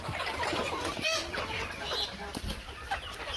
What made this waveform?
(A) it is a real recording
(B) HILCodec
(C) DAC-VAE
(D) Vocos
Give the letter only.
A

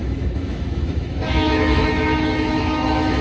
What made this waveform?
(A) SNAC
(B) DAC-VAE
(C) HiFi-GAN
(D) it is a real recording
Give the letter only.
B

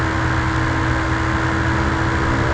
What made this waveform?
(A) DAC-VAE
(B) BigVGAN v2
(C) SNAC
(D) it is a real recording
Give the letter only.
D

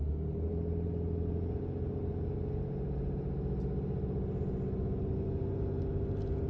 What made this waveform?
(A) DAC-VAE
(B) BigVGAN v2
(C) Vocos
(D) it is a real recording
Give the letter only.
D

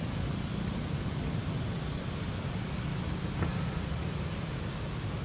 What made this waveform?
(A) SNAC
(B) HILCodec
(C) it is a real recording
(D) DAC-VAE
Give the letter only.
C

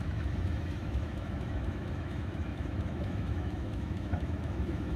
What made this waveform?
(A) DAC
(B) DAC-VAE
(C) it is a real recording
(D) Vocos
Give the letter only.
B